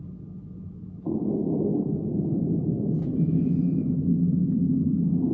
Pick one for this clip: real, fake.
real